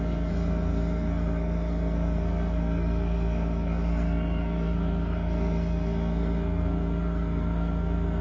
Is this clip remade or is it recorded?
remade